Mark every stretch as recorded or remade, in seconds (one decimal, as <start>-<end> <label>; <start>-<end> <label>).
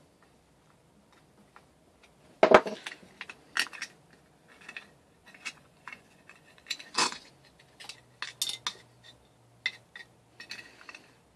0.0-5.2 recorded; 5.2-7.3 remade; 7.3-11.4 recorded